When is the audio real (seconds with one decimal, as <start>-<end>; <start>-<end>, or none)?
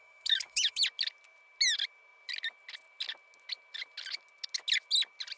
0.8-5.4